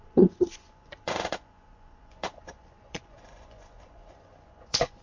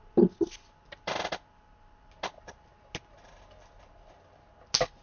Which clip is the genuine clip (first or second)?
second